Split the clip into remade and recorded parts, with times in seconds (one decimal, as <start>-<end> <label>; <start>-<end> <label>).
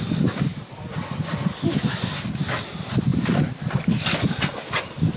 0.0-5.2 recorded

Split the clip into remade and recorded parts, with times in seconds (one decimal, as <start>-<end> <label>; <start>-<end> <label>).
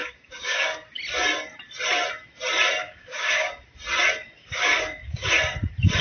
0.0-1.0 remade; 1.0-2.8 recorded; 2.8-3.5 remade; 3.5-4.4 recorded; 4.4-5.3 remade; 5.3-6.0 recorded